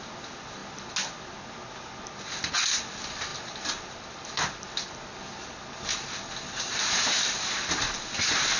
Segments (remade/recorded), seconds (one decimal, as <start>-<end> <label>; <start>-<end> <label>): 0.0-8.6 recorded